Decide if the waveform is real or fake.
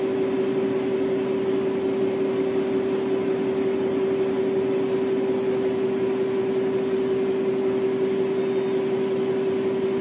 real